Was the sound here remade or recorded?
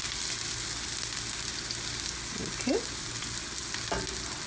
recorded